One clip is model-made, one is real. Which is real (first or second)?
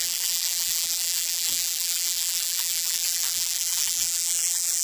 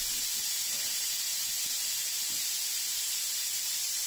second